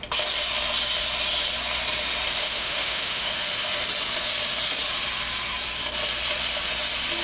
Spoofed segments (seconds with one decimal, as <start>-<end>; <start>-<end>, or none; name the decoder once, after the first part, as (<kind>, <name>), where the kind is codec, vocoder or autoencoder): 2.4-3.3 (autoencoder, DAC-VAE)